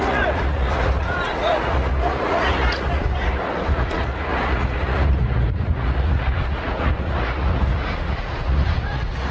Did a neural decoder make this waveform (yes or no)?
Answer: yes